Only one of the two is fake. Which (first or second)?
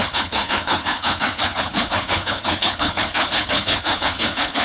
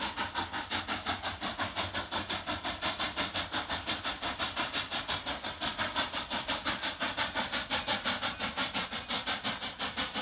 first